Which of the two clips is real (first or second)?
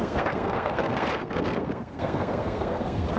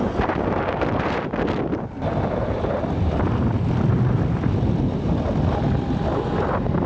second